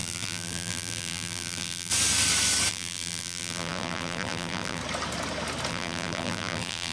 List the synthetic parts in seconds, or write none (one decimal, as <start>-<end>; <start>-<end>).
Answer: 0.0-1.9; 2.7-4.8; 5.7-6.9